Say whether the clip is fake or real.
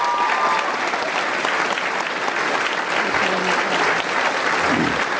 real